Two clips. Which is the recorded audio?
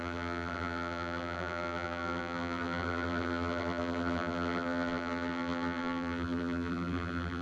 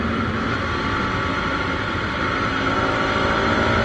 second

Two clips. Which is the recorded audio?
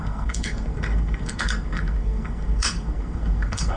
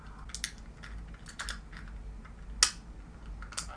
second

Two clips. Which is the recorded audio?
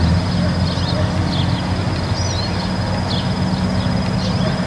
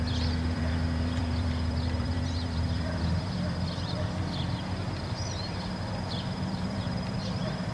first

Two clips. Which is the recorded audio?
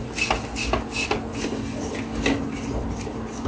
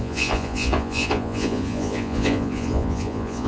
first